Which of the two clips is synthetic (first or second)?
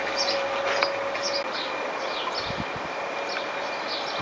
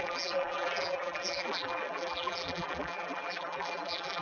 second